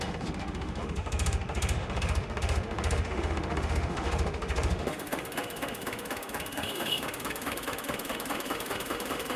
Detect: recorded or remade remade